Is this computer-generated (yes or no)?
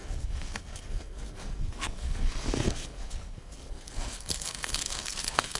yes